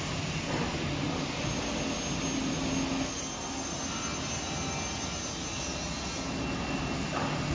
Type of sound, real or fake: real